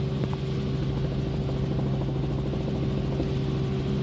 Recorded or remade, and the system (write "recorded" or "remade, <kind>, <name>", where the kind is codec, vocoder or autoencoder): recorded